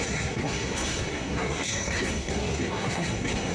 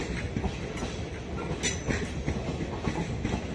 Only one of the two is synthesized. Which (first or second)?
first